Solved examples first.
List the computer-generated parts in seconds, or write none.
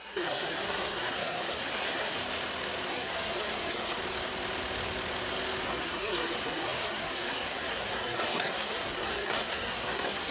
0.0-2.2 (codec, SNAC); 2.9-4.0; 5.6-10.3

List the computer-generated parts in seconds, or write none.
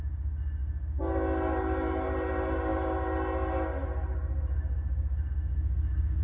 none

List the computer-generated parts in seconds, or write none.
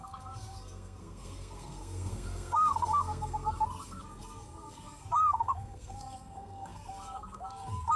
0.0-8.0 (codec, SNAC)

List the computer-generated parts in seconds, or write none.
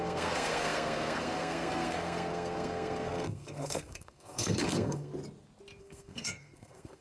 0.0-5.1 (codec, SNAC); 5.8-7.0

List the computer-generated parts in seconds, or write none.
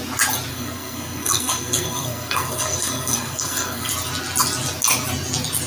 0.5-3.9 (codec, SNAC)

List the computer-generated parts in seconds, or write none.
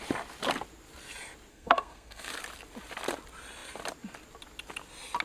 1.5-2.3 (codec, SNAC)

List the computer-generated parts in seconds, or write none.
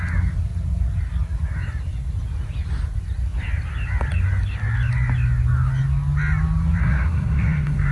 6.8-7.9 (codec, SNAC)